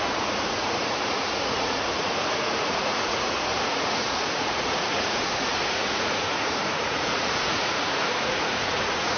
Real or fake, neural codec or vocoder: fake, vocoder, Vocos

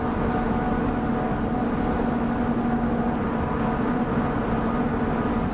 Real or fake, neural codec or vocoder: real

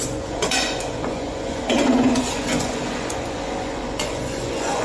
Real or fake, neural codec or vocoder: fake, vocoder, Vocos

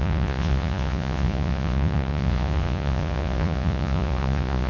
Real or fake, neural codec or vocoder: fake, vocoder, Vocos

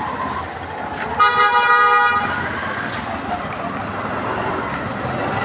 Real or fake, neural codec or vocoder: real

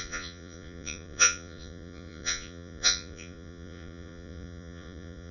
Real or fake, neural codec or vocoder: fake, vocoder, Vocos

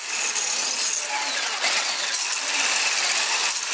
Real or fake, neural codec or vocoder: real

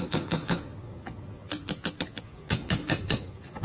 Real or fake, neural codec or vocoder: fake, vocoder, Vocos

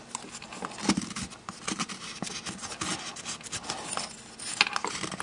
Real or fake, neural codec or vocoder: real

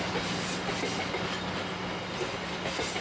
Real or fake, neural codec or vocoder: real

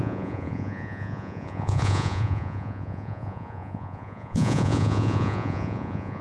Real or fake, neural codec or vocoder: fake, vocoder, Vocos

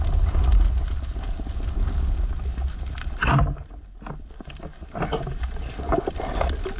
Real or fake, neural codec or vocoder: real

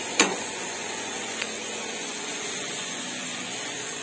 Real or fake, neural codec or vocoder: fake, vocoder, Vocos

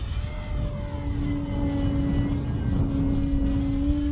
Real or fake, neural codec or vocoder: real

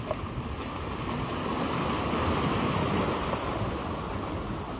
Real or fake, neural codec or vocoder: real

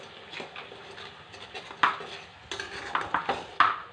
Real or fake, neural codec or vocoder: real